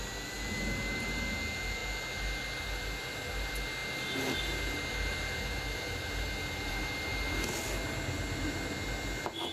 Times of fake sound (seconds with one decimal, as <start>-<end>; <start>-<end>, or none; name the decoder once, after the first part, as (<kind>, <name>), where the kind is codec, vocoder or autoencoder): none